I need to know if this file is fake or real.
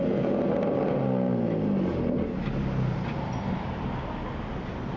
real